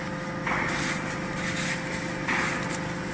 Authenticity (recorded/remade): recorded